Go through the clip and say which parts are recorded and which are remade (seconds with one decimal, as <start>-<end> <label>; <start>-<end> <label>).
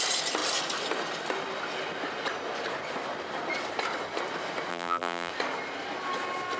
0.0-4.7 recorded; 4.7-5.3 remade; 5.3-6.6 recorded